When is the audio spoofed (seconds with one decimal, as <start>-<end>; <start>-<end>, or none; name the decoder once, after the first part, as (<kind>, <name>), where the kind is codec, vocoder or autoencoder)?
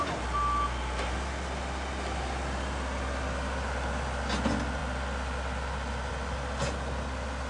none